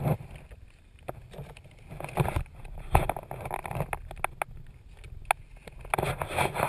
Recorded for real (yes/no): yes